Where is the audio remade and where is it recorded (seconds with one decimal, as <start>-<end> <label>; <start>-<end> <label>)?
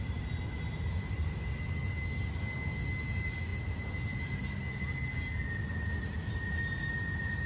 0.0-7.5 recorded